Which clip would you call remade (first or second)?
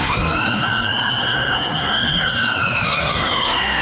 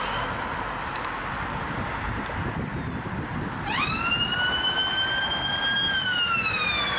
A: first